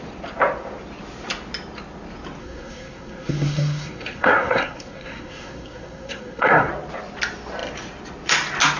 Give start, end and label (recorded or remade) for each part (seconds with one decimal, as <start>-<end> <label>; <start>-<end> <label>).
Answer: 0.0-2.4 recorded; 2.4-6.7 remade; 6.7-8.8 recorded